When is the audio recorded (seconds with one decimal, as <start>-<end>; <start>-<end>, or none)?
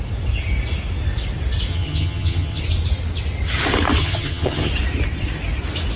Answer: 0.0-1.7; 2.6-4.0; 4.7-6.0